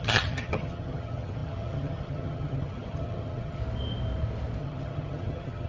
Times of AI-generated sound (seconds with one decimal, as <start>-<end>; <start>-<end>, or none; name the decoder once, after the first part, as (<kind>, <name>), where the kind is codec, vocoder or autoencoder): 0.0-3.6 (vocoder, HiFi-GAN); 4.6-5.7